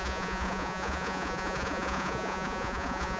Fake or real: fake